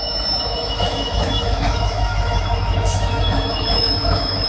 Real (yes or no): no